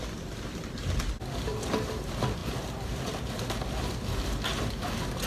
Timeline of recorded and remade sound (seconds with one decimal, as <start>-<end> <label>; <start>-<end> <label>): 0.0-5.3 recorded